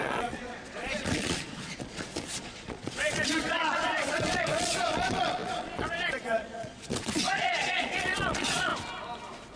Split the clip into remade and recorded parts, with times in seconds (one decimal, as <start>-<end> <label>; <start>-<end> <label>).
0.0-8.7 remade; 8.7-9.6 recorded